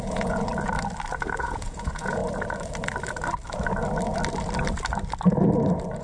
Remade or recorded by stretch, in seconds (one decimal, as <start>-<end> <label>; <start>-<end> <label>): 0.0-0.5 remade; 0.5-1.4 recorded; 1.4-2.2 remade; 2.2-6.0 recorded